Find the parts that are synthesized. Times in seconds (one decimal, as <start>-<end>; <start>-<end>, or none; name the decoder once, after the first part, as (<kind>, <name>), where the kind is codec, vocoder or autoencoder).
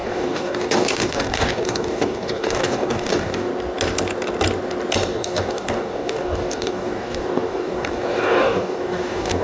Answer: 0.0-3.5 (codec, DAC); 5.1-9.4